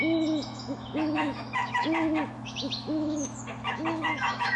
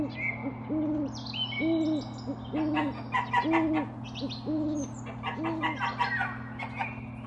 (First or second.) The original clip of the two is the second